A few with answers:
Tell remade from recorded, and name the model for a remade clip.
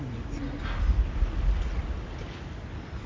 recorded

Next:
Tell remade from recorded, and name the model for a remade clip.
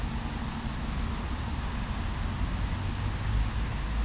recorded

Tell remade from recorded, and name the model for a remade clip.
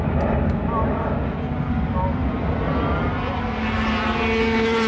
recorded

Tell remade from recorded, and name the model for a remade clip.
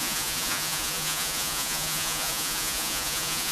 remade, vocoder, Vocos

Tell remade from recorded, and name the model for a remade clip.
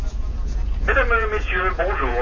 remade, vocoder, Vocos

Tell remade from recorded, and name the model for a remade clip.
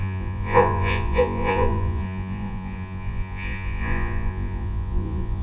remade, vocoder, Vocos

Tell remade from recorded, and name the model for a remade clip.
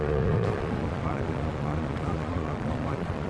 remade, vocoder, Vocos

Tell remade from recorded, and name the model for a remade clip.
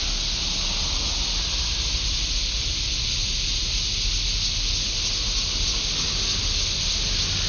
recorded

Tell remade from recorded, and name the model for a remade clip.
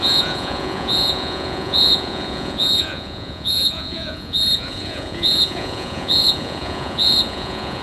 remade, vocoder, Vocos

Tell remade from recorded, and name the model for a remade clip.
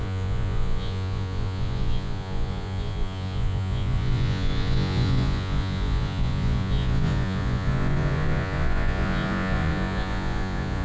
remade, vocoder, Vocos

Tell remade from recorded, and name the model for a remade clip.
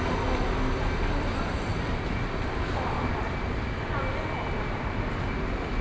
recorded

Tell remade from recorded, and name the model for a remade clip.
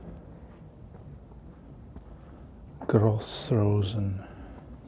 recorded